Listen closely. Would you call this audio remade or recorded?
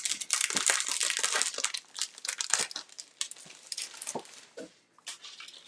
recorded